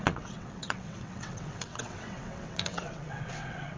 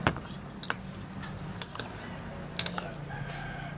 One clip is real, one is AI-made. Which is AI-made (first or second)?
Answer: first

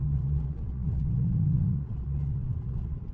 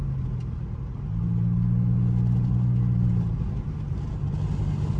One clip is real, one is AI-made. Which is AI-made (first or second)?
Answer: first